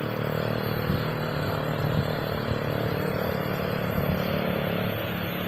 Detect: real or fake real